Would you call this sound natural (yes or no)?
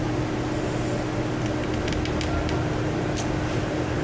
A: yes